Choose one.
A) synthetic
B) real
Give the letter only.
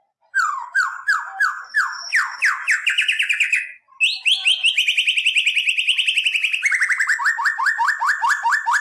B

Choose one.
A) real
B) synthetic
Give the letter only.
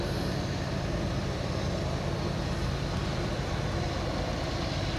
A